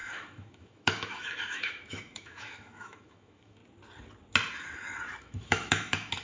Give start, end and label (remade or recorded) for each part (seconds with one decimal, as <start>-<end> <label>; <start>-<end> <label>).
0.0-3.6 remade; 3.6-5.2 recorded; 5.2-6.2 remade